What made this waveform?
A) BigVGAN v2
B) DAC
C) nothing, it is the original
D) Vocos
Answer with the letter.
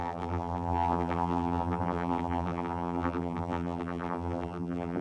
A